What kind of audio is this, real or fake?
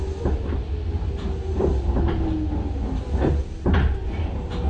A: real